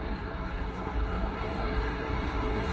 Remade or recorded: remade